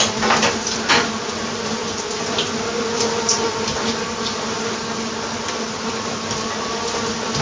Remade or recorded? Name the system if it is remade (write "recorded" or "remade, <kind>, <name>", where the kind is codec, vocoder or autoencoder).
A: recorded